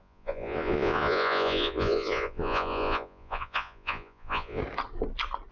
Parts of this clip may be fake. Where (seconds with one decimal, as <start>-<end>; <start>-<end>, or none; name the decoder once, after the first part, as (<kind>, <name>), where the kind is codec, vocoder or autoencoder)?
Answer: 0.0-4.6 (vocoder, Vocos)